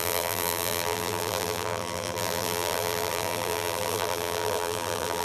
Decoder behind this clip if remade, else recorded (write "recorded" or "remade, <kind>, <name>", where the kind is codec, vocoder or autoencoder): remade, vocoder, BigVGAN v2